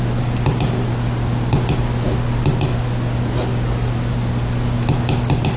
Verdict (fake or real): real